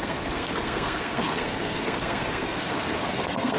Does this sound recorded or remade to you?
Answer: remade